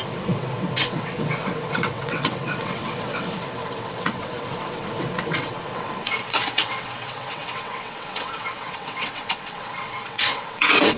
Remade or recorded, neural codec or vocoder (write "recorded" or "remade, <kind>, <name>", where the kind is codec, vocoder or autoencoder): remade, vocoder, WaveNeXt